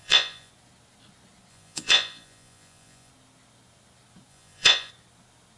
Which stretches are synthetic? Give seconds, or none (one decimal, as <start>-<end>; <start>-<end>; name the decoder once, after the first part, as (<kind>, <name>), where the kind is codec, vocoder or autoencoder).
0.0-0.5 (vocoder, Vocos); 1.5-3.1; 4.3-4.9

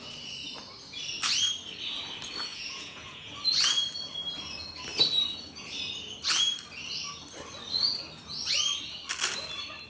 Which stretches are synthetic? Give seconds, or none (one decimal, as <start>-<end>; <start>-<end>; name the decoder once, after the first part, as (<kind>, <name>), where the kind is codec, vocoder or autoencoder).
2.5-3.3 (vocoder, Vocos)

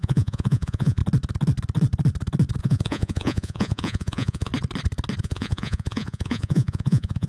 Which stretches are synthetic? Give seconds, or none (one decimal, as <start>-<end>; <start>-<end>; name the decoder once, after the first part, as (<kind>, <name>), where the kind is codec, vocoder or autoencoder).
0.0-1.0 (vocoder, Vocos); 2.6-4.5; 5.2-7.3

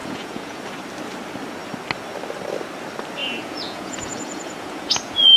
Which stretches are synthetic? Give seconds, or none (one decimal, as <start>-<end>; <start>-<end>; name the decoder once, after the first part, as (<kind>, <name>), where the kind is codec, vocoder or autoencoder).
0.0-0.6 (vocoder, Vocos); 3.2-5.4

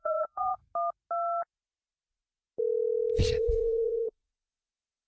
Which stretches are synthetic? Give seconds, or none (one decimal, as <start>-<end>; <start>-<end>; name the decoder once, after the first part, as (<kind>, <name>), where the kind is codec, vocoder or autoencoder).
0.0-0.6 (vocoder, Vocos); 3.4-5.1

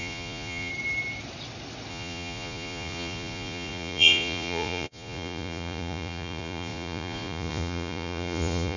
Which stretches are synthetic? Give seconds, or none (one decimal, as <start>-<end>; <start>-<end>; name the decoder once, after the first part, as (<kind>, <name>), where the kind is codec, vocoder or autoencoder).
0.0-0.7 (vocoder, Vocos); 1.9-8.8